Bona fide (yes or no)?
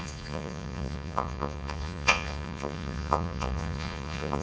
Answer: no